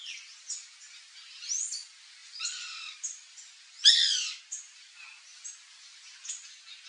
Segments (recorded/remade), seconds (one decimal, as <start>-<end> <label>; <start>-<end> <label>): 0.0-2.2 recorded; 2.2-4.4 remade; 4.4-5.7 recorded; 5.7-6.3 remade; 6.3-6.9 recorded